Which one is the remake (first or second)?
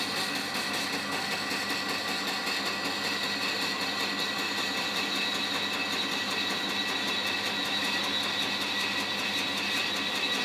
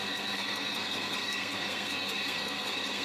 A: second